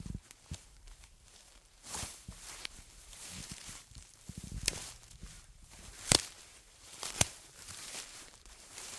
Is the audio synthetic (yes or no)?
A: yes